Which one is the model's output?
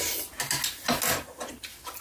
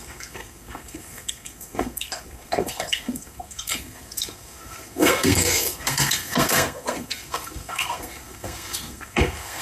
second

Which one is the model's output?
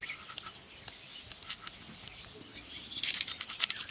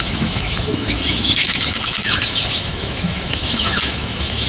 second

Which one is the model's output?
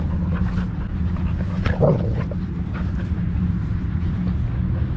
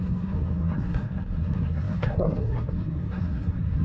second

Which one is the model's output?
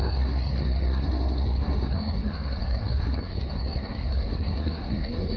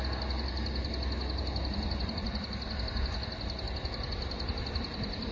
first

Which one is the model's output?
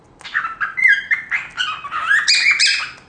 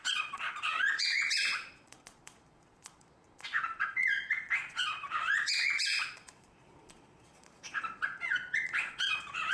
second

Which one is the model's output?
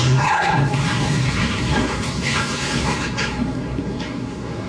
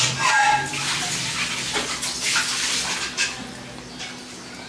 first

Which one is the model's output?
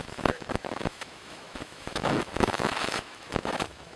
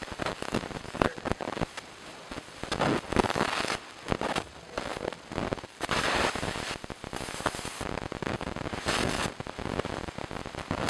first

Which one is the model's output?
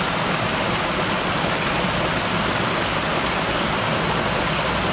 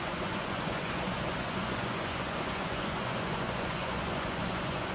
second